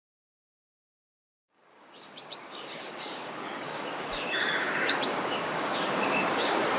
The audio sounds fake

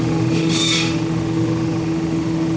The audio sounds fake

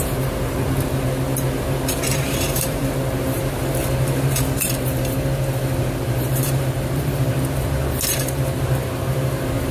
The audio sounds fake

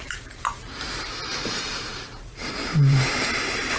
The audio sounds fake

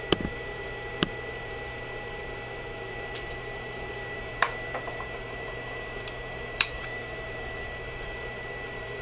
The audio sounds fake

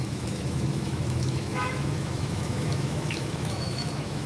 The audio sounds fake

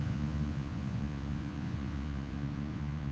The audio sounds fake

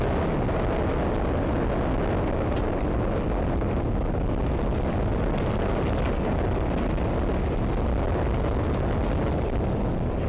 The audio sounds real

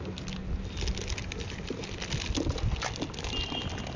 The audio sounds real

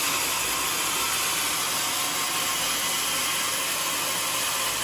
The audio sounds real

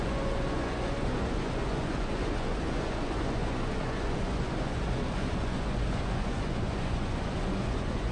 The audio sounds fake